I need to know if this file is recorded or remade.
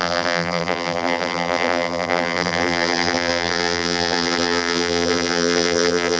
remade